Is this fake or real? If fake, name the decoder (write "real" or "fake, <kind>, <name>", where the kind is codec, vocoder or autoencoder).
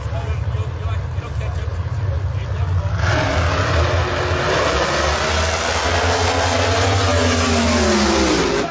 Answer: real